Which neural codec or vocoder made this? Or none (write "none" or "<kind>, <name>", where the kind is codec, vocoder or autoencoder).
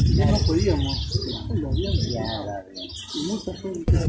none